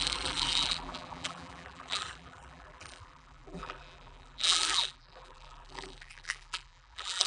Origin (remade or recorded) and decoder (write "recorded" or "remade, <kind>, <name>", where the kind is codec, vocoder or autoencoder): remade, vocoder, BigVGAN v2